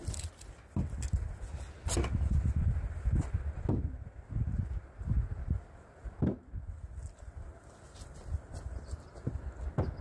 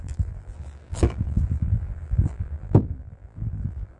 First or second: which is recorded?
first